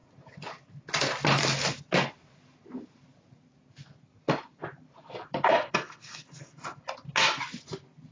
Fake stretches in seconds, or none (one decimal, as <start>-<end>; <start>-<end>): 5.5-6.6